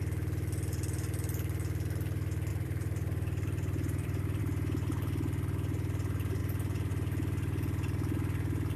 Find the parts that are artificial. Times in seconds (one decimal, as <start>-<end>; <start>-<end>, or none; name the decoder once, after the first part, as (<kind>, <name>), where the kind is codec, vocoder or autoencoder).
2.5-4.4 (vocoder, BigVGAN v2)